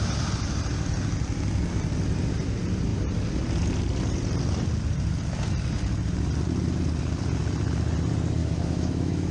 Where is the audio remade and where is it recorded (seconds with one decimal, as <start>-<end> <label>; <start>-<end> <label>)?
0.0-8.4 recorded; 8.4-9.3 remade